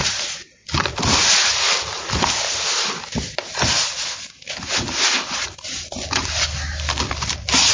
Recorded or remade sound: recorded